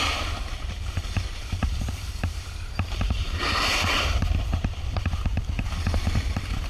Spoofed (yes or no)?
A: yes